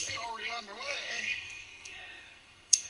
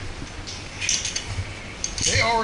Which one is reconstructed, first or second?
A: first